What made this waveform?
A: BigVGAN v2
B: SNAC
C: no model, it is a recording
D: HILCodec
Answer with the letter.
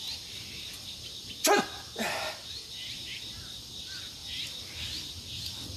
C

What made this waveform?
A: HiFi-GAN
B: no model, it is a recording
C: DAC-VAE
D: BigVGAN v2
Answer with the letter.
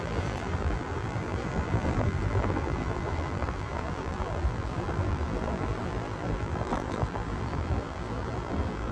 D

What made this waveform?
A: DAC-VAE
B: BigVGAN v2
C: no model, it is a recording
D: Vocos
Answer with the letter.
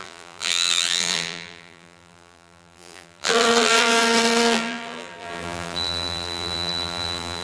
B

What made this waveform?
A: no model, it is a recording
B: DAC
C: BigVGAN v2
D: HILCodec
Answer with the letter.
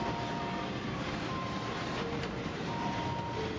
A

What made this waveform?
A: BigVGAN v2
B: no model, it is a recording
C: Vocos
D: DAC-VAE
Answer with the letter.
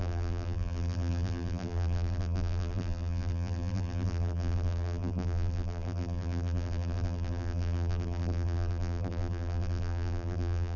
A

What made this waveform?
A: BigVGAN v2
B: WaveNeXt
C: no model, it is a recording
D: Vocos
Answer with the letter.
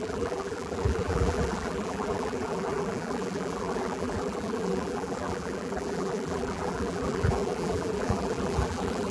A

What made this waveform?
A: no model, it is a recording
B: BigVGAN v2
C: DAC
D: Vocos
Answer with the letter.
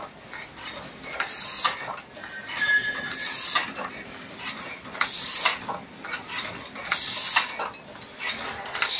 A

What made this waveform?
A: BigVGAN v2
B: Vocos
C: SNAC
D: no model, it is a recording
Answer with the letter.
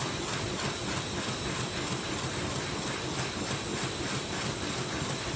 A